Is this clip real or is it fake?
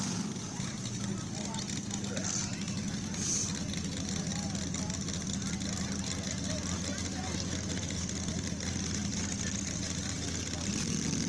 real